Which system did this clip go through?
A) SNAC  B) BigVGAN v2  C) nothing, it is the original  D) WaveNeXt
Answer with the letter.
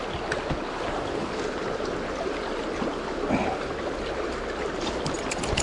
C